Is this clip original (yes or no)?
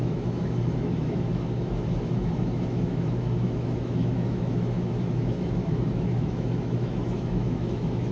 no